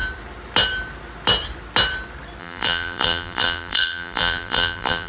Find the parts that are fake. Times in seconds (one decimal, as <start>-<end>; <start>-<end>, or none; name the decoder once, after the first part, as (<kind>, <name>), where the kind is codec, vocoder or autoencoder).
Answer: 2.4-5.1 (vocoder, BigVGAN v2)